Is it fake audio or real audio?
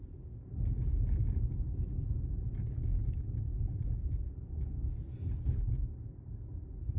real